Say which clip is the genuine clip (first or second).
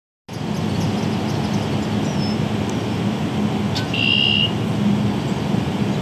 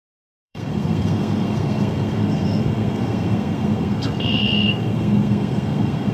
first